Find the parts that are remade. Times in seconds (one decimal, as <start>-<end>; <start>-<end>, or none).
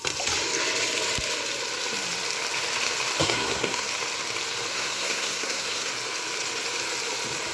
3.2-3.9; 4.7-5.9